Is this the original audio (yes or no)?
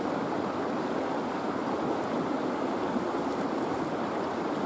yes